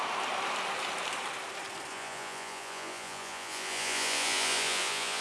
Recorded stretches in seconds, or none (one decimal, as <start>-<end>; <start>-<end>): 0.0-1.9